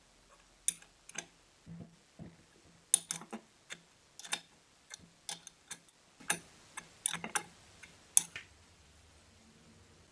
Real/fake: real